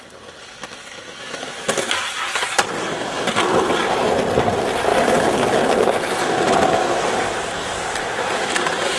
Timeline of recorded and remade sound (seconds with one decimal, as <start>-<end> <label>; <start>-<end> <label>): 0.0-9.0 recorded